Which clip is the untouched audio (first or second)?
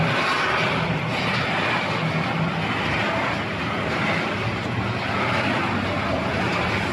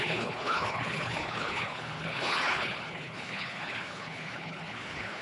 first